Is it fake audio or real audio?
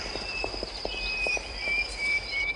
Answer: fake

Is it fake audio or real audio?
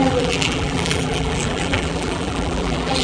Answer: fake